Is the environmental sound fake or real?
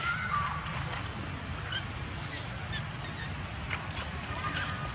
real